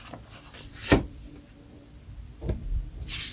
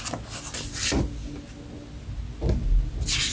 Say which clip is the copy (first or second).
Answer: first